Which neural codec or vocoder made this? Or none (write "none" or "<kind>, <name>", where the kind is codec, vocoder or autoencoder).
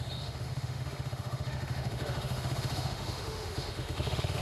autoencoder, DAC-VAE